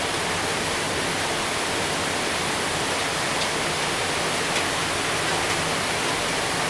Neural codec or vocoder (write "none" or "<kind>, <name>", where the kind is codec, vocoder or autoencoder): none